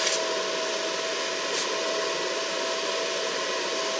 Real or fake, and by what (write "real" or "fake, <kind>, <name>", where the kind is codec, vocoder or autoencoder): real